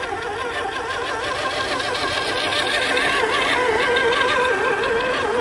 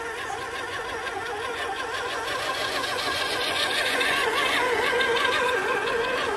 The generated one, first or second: second